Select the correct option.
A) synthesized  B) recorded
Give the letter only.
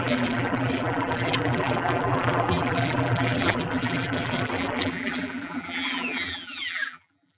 A